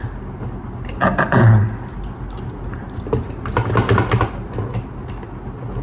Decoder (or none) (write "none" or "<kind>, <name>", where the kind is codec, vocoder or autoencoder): none